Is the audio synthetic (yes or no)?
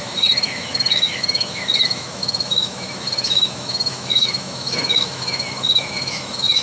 yes